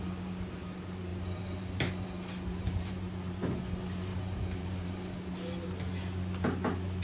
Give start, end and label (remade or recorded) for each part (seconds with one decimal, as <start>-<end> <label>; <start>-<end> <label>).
0.0-1.1 recorded; 1.1-3.4 remade; 3.4-4.1 recorded; 4.1-5.0 remade; 5.0-7.0 recorded